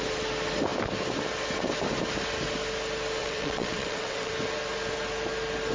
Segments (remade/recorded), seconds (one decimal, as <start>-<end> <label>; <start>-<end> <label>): 0.0-3.2 recorded; 3.2-4.3 remade; 4.3-5.7 recorded